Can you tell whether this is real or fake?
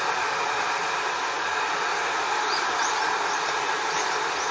real